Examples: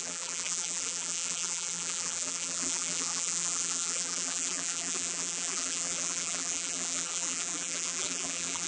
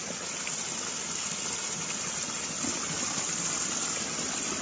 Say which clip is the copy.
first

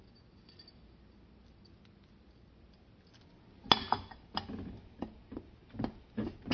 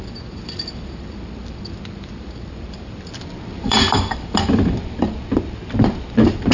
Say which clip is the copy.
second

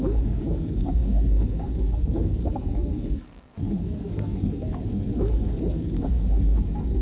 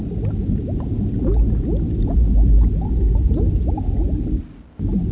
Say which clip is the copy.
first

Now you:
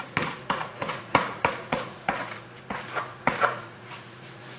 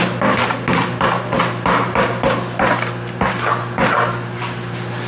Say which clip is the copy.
first